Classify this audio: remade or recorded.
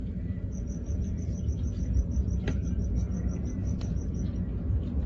remade